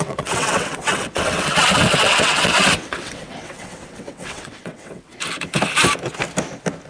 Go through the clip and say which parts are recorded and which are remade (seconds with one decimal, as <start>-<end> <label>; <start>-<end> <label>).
0.0-5.1 remade; 5.1-6.9 recorded